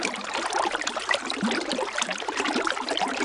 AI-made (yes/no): yes